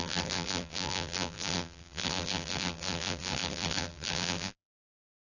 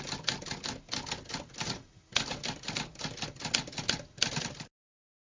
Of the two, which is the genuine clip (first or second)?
second